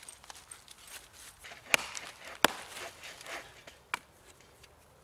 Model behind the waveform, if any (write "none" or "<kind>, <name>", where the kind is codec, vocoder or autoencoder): none